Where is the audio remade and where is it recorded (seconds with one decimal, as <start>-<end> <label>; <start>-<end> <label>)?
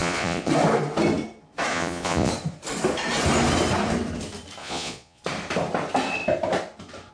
0.0-0.5 remade; 0.5-1.7 recorded; 1.7-2.3 remade; 2.3-4.6 recorded; 4.6-5.2 remade; 5.2-7.1 recorded